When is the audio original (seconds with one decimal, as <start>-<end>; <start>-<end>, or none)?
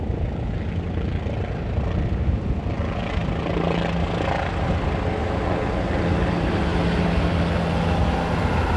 0.0-8.8